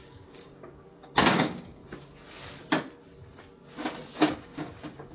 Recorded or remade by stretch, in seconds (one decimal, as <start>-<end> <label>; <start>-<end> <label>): 0.0-1.8 remade; 1.8-4.3 recorded; 4.3-5.1 remade